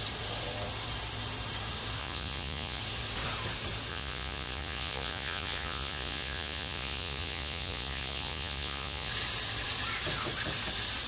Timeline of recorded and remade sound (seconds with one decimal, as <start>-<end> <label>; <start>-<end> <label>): 0.0-2.0 recorded; 2.0-2.8 remade; 2.8-3.9 recorded; 3.9-9.1 remade; 9.1-11.1 recorded